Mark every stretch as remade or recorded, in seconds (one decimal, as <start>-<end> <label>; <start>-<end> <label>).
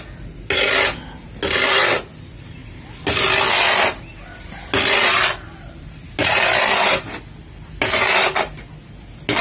0.0-9.4 recorded